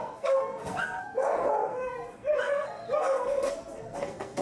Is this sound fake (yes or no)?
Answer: yes